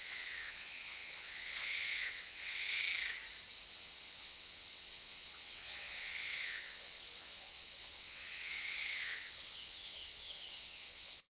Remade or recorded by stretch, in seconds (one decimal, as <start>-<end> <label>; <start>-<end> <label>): 0.0-2.8 remade; 2.8-3.7 recorded; 3.7-11.3 remade